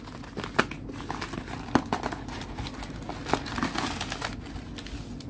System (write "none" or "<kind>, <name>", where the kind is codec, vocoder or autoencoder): none